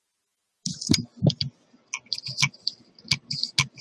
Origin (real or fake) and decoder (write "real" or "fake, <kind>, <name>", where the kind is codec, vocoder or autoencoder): real